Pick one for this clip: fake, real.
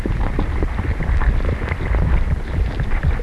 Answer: real